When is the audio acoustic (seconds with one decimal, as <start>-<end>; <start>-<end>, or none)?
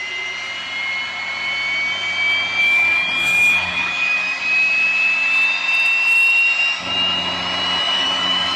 0.0-2.6; 4.4-7.8